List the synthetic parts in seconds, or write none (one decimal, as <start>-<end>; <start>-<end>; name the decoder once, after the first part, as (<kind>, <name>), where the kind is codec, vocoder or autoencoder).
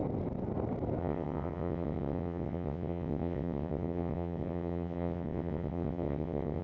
1.0-6.6 (vocoder, WaveNeXt)